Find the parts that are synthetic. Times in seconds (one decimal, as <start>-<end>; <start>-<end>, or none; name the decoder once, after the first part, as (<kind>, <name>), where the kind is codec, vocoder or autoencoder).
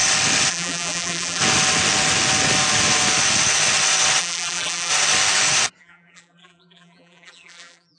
0.5-1.4 (vocoder, BigVGAN v2); 4.2-4.9; 5.8-8.0